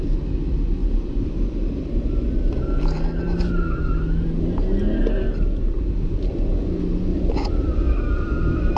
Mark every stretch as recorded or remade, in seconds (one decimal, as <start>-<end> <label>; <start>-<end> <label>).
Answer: 0.0-0.8 recorded; 0.8-2.7 remade; 2.7-7.1 recorded; 7.1-8.8 remade

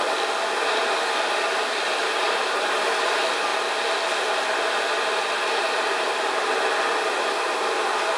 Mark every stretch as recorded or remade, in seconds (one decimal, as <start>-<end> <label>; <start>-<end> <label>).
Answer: 0.0-2.0 recorded; 2.0-2.9 remade; 2.9-8.2 recorded

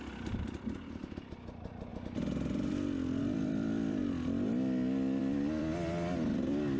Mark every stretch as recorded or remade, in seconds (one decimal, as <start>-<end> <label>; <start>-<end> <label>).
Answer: 0.0-1.9 remade; 1.9-3.2 recorded; 3.2-4.0 remade; 4.0-5.2 recorded; 5.2-6.8 remade

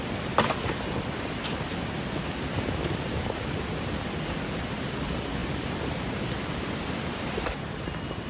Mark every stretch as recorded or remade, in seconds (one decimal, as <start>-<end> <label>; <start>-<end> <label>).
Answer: 0.0-8.3 recorded